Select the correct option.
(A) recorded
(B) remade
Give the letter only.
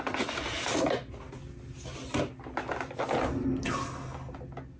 A